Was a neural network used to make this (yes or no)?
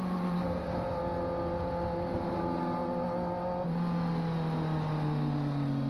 no